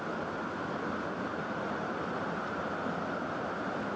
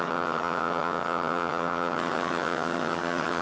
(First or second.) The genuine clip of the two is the first